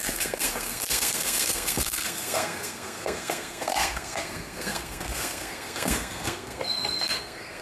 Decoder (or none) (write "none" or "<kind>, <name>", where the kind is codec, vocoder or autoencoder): codec, SNAC